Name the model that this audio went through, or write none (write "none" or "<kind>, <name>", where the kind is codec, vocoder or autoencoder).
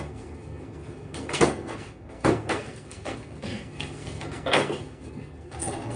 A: codec, SNAC